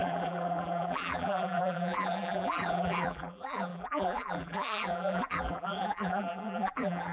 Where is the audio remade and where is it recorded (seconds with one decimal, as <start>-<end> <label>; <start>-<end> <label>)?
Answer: 0.0-7.1 remade